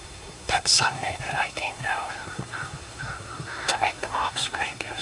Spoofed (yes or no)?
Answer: yes